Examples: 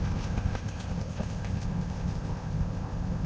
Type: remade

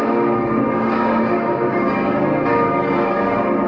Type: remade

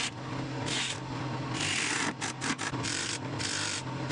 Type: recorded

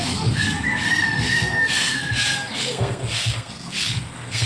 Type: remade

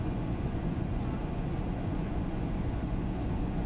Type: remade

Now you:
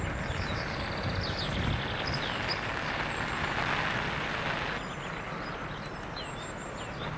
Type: recorded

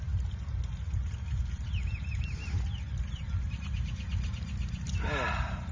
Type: recorded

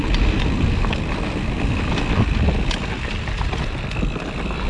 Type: recorded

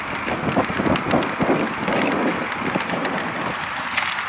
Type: recorded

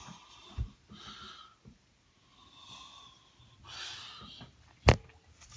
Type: recorded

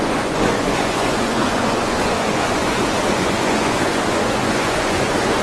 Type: remade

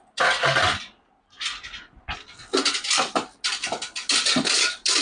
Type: recorded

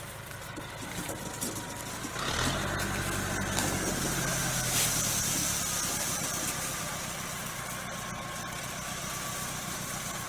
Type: recorded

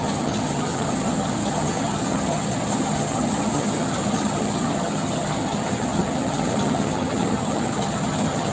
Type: remade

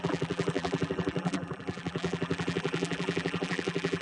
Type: remade